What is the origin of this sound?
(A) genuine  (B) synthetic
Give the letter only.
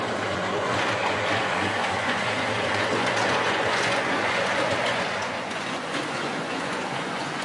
B